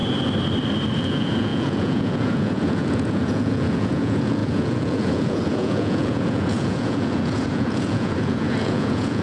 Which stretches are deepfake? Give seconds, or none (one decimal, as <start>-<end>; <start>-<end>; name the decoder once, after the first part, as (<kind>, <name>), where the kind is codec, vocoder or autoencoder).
1.0-9.2 (vocoder, Vocos)